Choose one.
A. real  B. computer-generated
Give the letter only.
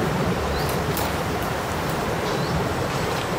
B